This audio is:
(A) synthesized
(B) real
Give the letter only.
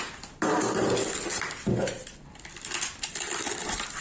B